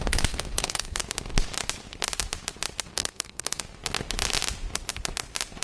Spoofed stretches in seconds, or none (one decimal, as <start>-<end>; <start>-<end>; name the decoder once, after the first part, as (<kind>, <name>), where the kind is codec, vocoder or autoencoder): 0.0-1.0 (codec, SNAC); 2.9-3.6